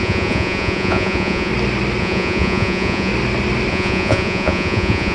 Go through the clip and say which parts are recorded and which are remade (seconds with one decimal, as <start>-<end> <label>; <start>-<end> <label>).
0.0-1.5 remade; 1.5-2.0 recorded; 2.0-3.1 remade; 3.1-3.7 recorded; 3.7-5.1 remade